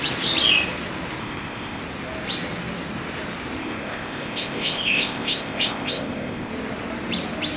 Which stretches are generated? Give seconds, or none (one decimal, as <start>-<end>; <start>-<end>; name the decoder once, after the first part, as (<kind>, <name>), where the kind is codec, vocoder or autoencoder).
1.2-1.8 (codec, ZipCodec); 3.6-6.5